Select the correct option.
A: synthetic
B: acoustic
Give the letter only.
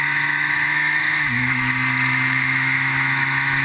A